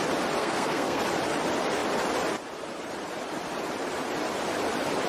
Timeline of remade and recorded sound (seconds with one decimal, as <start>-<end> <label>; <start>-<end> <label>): 0.0-0.4 recorded; 0.4-1.0 remade; 1.0-5.1 recorded